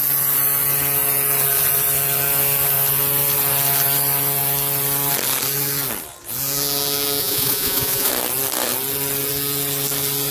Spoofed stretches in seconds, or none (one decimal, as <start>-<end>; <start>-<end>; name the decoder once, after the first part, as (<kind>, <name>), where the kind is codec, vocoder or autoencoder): 7.2-8.1 (vocoder, Vocos)